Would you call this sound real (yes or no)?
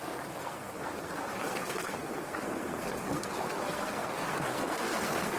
no